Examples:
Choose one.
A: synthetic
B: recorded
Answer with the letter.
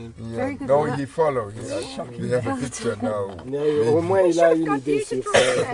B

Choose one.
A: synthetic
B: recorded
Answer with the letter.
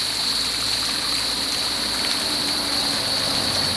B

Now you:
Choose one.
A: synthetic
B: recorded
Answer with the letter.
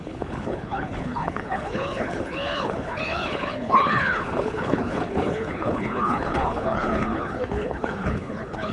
A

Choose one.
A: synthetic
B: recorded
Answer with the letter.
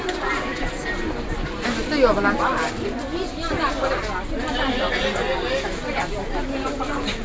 B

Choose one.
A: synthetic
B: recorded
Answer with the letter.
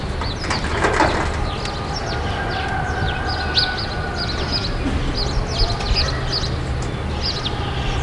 B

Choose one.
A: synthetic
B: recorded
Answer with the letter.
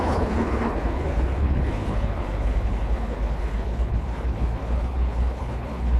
A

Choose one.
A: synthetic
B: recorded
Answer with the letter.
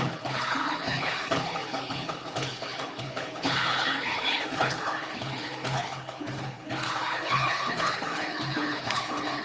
A